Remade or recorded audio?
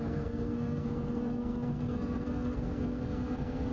remade